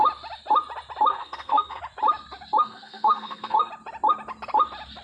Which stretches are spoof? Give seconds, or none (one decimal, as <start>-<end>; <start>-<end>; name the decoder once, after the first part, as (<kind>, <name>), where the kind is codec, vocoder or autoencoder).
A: 1.1-1.8 (codec, SNAC); 2.6-3.7